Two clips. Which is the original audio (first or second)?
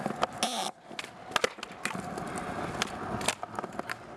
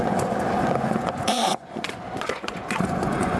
first